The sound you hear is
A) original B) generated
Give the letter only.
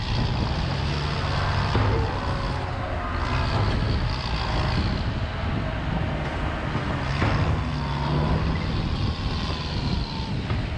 A